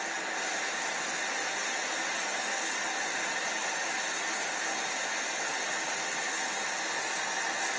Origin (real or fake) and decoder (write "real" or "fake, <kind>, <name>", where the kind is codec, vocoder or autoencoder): real